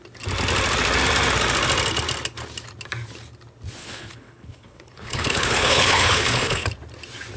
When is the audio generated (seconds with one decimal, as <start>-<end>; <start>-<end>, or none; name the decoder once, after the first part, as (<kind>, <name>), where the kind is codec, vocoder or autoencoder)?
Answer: 3.8-6.7 (codec, HILCodec)